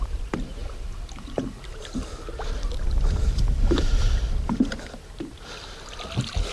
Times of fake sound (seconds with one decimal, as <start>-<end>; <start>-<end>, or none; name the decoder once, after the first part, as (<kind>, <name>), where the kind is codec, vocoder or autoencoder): none